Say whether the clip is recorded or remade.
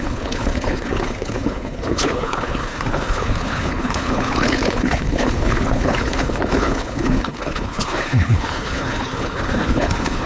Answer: remade